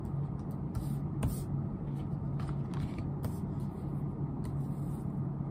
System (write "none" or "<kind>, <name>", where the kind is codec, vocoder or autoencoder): none